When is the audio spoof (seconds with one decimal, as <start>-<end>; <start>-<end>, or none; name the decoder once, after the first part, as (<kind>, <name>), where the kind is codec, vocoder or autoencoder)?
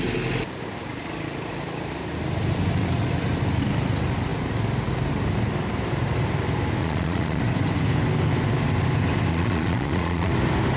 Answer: 6.8-7.4 (vocoder, Vocos); 9.3-10.3